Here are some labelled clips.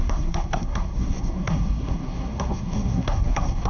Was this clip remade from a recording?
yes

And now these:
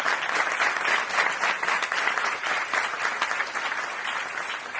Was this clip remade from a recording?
no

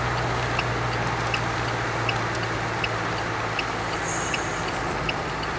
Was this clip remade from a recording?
no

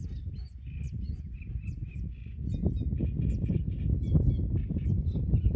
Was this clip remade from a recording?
no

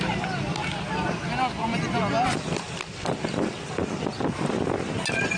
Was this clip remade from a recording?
no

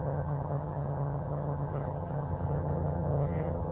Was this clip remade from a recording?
yes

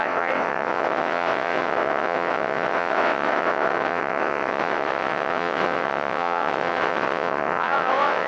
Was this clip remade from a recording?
yes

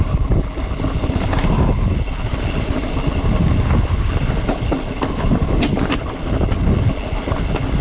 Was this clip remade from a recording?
no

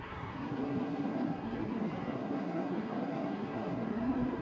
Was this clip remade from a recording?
yes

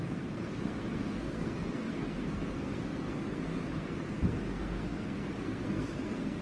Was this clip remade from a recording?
yes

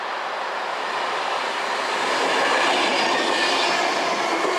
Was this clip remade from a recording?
no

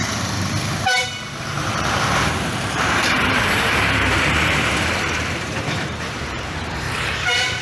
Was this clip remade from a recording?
yes